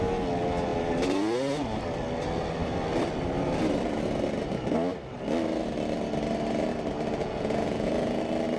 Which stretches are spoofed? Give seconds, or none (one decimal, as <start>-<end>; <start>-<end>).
7.2-8.2